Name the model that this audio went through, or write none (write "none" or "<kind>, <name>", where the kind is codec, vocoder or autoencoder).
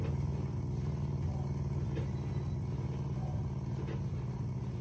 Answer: none